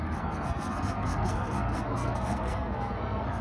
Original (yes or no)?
no